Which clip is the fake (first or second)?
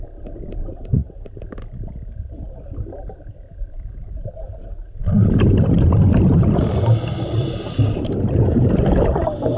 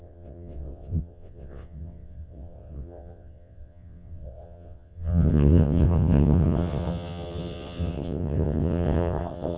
second